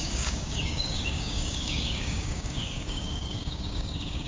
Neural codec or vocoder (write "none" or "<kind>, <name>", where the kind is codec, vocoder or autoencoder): codec, DAC